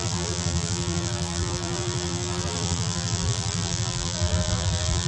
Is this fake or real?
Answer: fake